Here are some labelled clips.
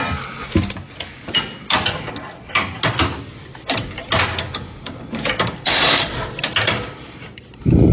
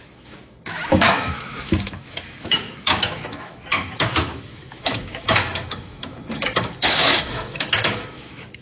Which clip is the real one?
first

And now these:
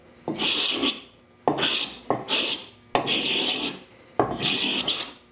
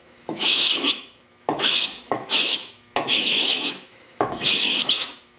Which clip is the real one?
first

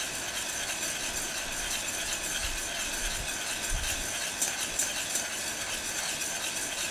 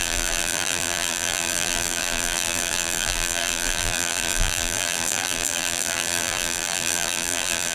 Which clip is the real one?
first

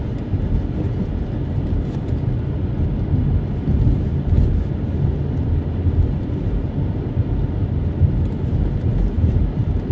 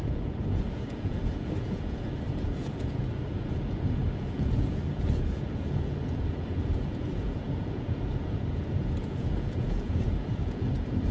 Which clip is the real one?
first